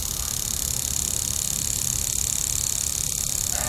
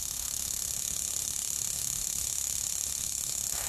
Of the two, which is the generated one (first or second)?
second